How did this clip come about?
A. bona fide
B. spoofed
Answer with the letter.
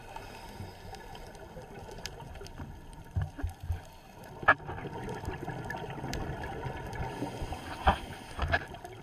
A